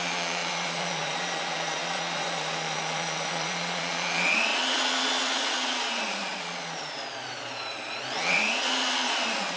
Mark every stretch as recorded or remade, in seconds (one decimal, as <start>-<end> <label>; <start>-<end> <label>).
0.0-9.6 remade